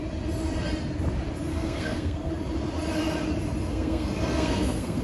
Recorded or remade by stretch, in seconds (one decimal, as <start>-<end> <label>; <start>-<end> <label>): 0.0-1.5 recorded; 1.5-2.3 remade; 2.3-3.7 recorded; 3.7-5.0 remade

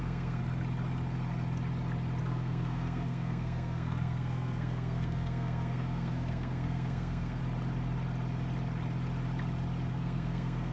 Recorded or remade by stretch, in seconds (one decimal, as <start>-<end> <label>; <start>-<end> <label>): 0.0-0.4 remade; 0.4-2.2 recorded; 2.2-7.4 remade; 7.4-9.9 recorded; 9.9-10.7 remade

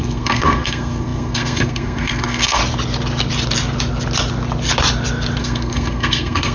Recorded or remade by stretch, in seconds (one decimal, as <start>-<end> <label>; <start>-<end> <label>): 0.0-2.6 remade; 2.6-5.4 recorded; 5.4-6.5 remade

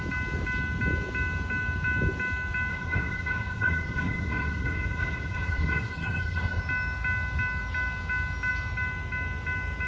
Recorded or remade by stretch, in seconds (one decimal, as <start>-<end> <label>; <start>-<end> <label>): 0.0-2.7 recorded; 2.7-6.6 remade; 6.6-9.9 recorded

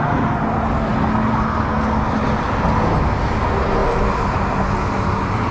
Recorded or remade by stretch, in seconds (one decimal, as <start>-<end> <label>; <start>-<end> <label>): 0.0-5.5 recorded

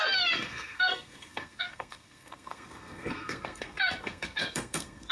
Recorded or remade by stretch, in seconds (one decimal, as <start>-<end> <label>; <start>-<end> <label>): 0.0-5.1 remade

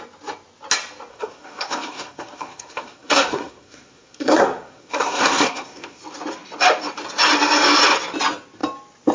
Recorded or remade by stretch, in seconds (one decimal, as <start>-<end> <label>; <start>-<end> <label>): 0.0-1.1 recorded; 1.1-6.0 remade; 6.0-9.1 recorded